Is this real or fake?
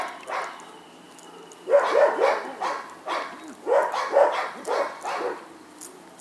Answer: real